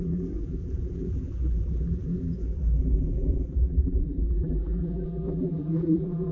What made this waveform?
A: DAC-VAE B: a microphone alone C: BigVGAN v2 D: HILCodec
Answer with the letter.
C